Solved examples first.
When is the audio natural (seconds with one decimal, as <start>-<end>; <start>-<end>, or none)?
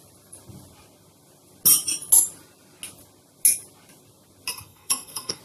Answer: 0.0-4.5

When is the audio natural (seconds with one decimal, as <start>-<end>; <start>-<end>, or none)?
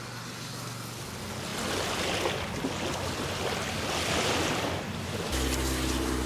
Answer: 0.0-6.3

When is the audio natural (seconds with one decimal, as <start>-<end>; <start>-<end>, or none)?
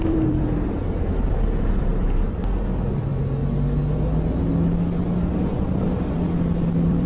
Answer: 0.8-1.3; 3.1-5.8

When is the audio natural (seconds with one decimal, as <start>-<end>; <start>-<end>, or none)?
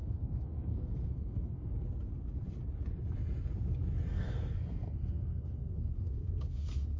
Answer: 1.7-4.1